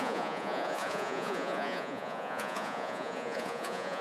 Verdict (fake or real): fake